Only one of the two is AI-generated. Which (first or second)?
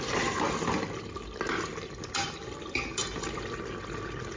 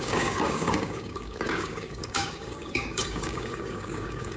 second